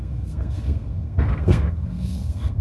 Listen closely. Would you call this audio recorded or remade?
remade